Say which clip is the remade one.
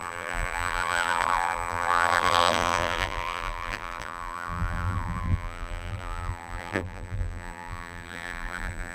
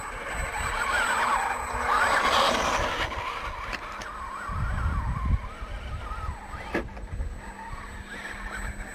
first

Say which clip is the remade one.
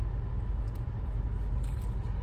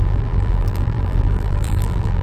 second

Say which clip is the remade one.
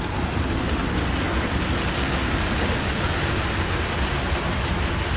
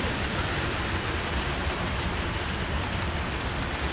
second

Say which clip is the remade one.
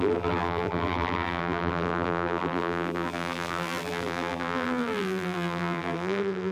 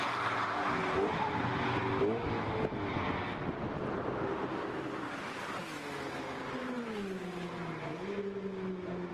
first